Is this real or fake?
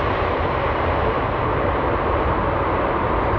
real